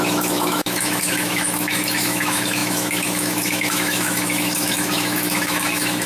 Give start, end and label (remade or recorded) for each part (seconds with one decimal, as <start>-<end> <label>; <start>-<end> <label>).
0.0-6.1 remade